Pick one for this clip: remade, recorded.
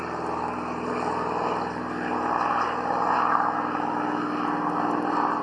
recorded